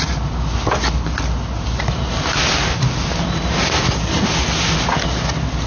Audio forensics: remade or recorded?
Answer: recorded